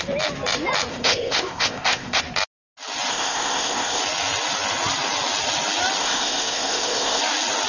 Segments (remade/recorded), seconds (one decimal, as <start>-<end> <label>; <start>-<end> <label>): 0.0-0.9 recorded; 0.9-2.2 remade; 2.2-3.1 recorded; 3.1-4.0 remade; 4.0-6.0 recorded; 6.0-7.2 remade; 7.2-7.7 recorded